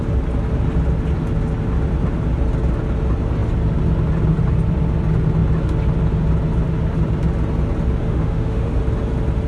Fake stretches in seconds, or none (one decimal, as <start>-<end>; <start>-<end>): 8.0-8.8